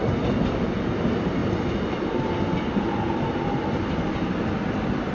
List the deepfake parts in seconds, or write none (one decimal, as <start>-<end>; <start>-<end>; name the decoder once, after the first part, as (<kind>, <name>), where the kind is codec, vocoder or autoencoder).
none

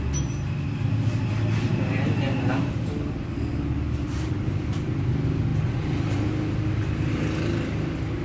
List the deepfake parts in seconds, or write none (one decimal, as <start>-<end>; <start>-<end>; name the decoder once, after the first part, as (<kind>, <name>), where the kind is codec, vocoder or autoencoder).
none